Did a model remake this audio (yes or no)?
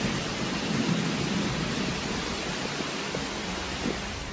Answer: no